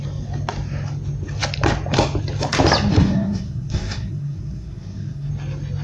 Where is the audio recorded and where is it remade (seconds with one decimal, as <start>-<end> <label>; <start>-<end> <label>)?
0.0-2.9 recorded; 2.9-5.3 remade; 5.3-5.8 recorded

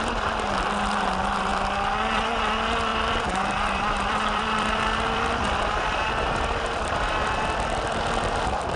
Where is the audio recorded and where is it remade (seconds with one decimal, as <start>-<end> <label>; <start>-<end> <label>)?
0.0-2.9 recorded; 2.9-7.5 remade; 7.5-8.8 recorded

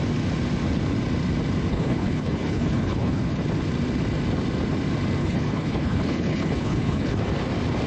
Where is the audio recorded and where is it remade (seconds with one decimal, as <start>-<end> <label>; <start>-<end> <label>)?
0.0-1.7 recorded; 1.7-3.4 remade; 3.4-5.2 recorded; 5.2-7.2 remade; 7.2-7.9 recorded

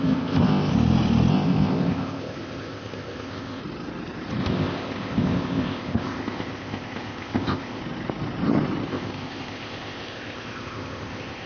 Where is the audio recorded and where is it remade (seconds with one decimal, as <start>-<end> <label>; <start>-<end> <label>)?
0.0-0.7 remade; 0.7-1.3 recorded; 1.3-3.6 remade; 3.6-4.4 recorded; 4.4-7.8 remade; 7.8-8.9 recorded; 8.9-11.5 remade

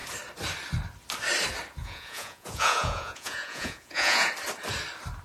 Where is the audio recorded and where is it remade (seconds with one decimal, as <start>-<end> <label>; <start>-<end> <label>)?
0.0-1.8 recorded; 1.8-4.3 remade; 4.3-5.2 recorded